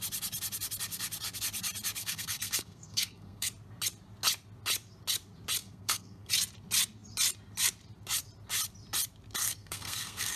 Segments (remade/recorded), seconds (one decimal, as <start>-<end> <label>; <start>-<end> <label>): 0.0-2.0 recorded; 2.0-3.5 remade; 3.5-5.6 recorded; 5.6-6.3 remade; 6.3-9.4 recorded; 9.4-10.4 remade